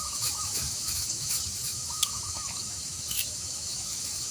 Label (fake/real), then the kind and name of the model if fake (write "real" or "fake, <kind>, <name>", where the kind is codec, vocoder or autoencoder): fake, autoencoder, DAC-VAE